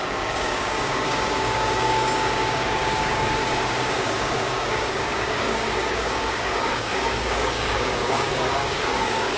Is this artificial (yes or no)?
yes